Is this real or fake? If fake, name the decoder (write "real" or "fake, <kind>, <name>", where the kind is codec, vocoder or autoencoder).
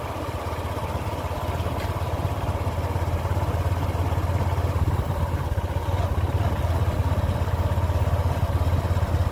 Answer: real